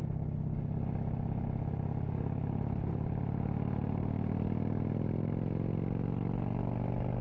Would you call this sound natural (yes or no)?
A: yes